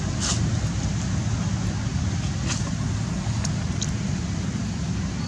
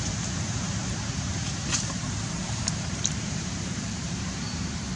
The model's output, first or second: second